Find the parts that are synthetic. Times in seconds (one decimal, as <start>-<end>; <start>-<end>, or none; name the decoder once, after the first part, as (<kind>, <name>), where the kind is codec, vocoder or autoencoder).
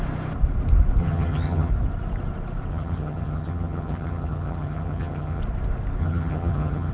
1.0-1.7 (vocoder, HiFi-GAN); 2.7-5.4; 6.0-6.9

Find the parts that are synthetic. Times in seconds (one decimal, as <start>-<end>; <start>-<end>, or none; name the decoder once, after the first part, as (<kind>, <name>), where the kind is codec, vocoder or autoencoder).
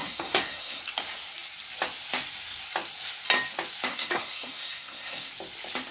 0.0-0.8 (codec, SNAC); 3.9-5.3